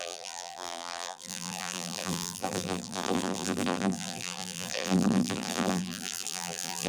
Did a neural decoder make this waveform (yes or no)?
yes